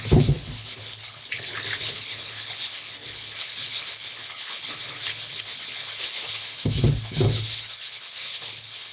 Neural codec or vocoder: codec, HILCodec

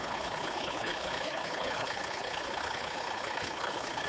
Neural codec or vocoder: codec, HILCodec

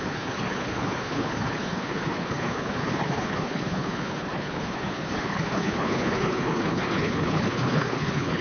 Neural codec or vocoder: codec, HILCodec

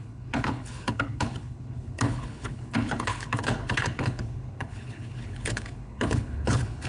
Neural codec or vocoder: codec, HILCodec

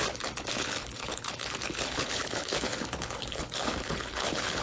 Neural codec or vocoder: codec, HILCodec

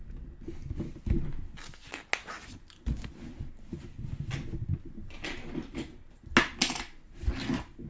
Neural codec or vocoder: none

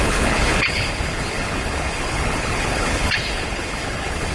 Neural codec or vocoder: codec, HILCodec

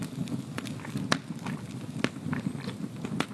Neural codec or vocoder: none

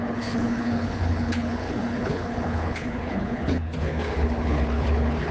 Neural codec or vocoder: codec, HILCodec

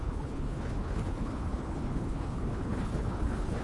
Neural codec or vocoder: codec, HILCodec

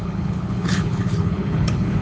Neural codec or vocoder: codec, HILCodec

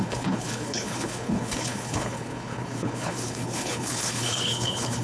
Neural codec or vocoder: codec, HILCodec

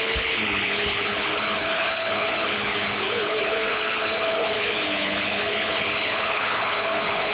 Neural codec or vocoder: codec, HILCodec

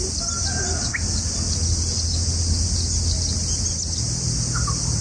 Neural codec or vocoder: none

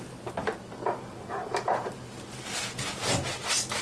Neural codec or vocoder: none